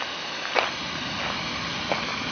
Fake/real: real